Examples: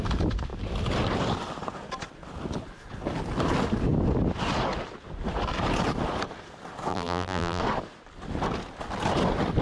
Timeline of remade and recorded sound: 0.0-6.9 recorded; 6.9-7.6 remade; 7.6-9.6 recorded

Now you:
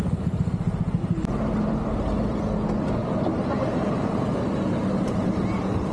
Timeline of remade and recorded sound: 0.0-1.0 recorded; 1.0-2.4 remade; 2.4-3.0 recorded; 3.0-5.9 remade

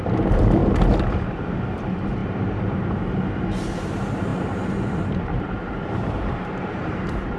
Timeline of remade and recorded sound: 0.0-0.6 remade; 0.6-1.5 recorded; 1.5-7.4 remade